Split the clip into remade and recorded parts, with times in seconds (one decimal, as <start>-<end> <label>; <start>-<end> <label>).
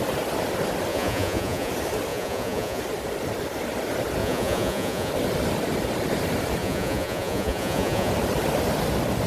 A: 0.0-0.9 recorded; 0.9-1.7 remade; 1.7-2.1 recorded; 2.1-2.8 remade; 2.8-4.2 recorded; 4.2-5.1 remade; 5.1-6.6 recorded; 6.6-8.1 remade; 8.1-9.3 recorded